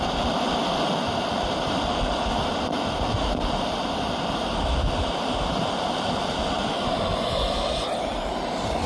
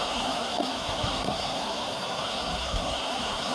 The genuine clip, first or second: first